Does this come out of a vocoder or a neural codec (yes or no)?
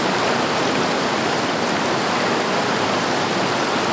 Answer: no